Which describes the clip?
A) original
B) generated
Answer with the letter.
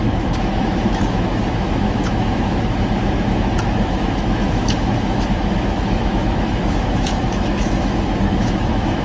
B